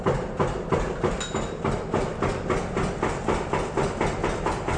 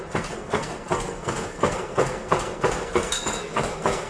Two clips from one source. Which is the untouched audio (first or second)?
first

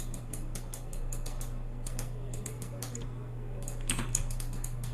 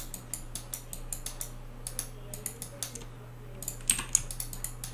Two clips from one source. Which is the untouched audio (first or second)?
second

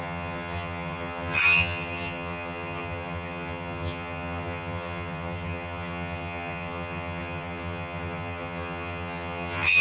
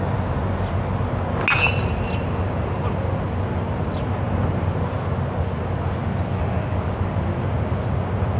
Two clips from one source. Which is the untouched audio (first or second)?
second